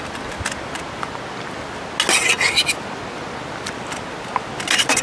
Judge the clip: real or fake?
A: real